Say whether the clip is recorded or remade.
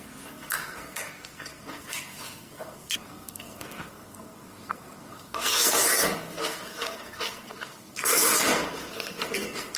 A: remade